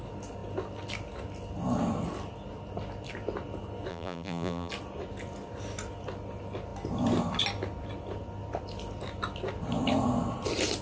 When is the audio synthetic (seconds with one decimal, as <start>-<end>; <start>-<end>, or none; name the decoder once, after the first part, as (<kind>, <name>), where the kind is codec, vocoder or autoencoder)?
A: 3.9-4.7 (vocoder, BigVGAN v2)